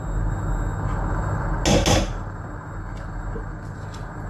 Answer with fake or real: real